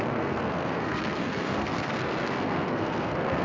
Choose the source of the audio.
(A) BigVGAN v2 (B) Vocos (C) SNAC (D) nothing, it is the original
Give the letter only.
C